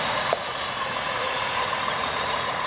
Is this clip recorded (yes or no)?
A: no